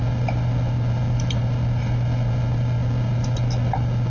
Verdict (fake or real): real